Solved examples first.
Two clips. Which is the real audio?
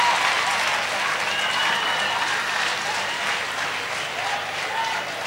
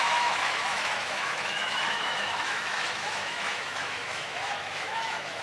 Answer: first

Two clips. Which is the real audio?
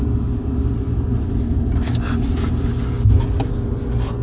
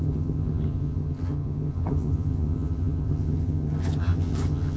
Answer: first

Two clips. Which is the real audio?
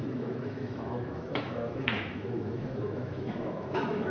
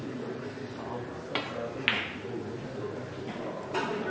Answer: second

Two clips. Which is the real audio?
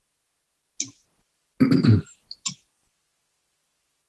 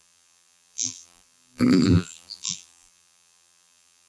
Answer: first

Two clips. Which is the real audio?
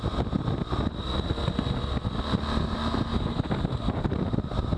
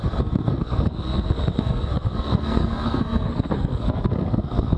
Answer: first